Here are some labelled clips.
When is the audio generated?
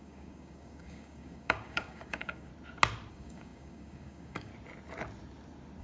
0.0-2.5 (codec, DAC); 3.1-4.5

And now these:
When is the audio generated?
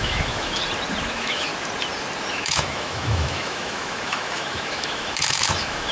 0.0-0.6 (autoencoder, DAC-VAE); 1.1-1.5; 2.3-5.9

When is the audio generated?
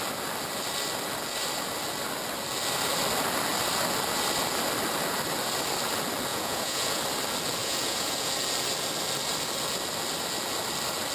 6.3-7.0 (vocoder, Vocos); 7.6-8.3